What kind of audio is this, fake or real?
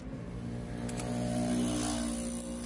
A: real